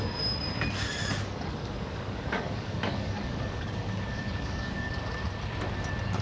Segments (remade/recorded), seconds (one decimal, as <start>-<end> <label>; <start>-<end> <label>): 0.0-1.2 recorded; 1.2-4.9 remade; 4.9-6.2 recorded